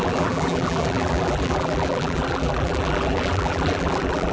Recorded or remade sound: remade